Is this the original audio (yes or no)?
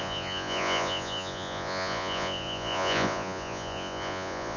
no